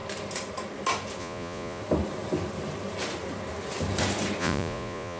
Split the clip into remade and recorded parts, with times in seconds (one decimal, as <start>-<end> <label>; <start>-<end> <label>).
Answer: 0.0-1.2 recorded; 1.2-1.8 remade; 1.8-4.4 recorded; 4.4-5.2 remade

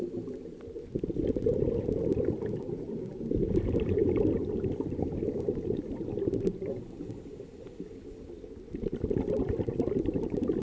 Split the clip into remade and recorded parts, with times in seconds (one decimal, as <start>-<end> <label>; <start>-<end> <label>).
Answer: 0.0-10.6 recorded

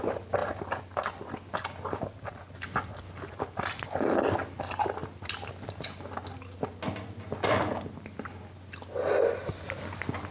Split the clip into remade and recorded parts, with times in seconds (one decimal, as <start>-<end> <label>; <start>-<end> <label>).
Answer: 0.0-10.3 recorded

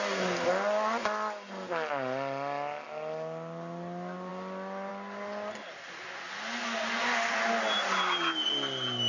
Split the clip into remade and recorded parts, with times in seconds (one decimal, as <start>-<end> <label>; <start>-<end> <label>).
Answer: 0.0-9.1 recorded

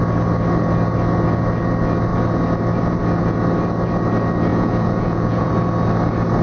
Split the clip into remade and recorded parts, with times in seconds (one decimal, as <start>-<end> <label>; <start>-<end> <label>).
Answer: 0.0-4.5 recorded; 4.5-5.5 remade; 5.5-6.4 recorded

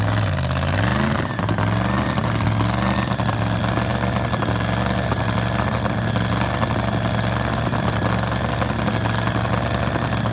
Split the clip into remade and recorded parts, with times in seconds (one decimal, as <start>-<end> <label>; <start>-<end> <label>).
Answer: 0.0-10.3 recorded

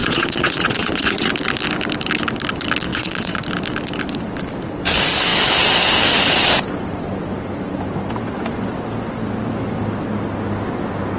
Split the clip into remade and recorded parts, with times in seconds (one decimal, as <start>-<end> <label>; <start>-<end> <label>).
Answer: 0.0-1.3 remade; 1.3-2.9 recorded; 2.9-3.4 remade; 3.4-11.2 recorded